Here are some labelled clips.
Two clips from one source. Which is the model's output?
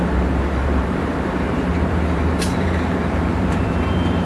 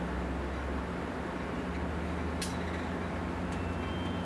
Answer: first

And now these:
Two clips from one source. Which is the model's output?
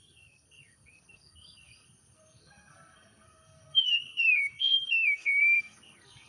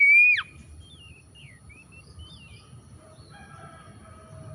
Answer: first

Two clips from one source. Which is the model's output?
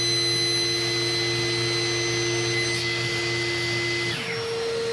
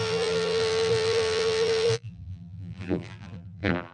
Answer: second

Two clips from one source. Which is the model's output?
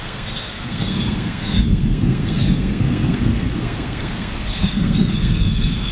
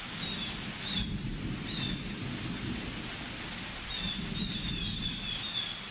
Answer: first